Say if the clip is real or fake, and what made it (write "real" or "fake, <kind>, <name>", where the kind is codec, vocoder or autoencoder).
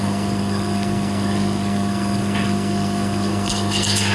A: fake, codec, SNAC